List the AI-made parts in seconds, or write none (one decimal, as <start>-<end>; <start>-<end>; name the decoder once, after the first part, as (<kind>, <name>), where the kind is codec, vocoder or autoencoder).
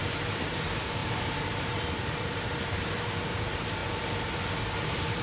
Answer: 0.0-3.8 (vocoder, BigVGAN v2); 4.6-5.2